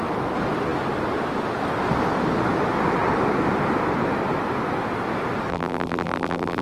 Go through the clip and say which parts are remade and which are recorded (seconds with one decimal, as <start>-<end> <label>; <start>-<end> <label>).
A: 0.0-5.5 recorded; 5.5-6.6 remade